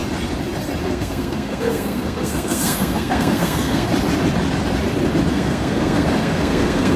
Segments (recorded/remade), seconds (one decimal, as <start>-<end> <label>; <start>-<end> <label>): 0.0-0.8 recorded; 0.8-3.9 remade; 3.9-5.3 recorded; 5.3-7.0 remade